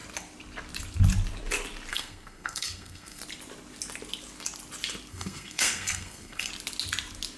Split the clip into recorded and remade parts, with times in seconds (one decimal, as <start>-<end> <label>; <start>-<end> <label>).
0.0-1.9 recorded; 1.9-3.2 remade; 3.2-5.1 recorded; 5.1-6.5 remade; 6.5-7.4 recorded